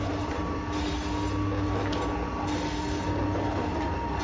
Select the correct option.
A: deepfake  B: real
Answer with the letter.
B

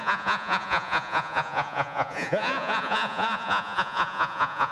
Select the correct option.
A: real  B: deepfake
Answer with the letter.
B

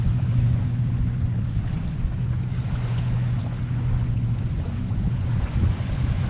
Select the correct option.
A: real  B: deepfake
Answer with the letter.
B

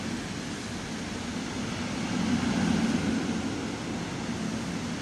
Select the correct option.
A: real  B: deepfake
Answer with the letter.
A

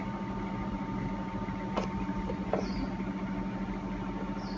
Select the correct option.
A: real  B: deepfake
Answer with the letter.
A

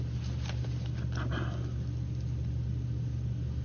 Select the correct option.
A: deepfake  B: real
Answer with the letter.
B